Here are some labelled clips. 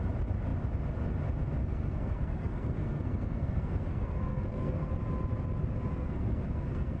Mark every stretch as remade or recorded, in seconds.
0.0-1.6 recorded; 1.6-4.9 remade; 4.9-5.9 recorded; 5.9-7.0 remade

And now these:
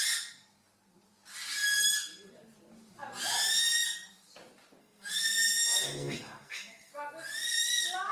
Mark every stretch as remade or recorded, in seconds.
0.0-4.8 recorded; 4.8-6.9 remade; 6.9-8.1 recorded

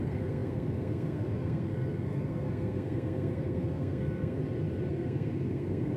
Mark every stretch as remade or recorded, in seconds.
0.0-4.4 remade; 4.4-4.9 recorded; 4.9-6.0 remade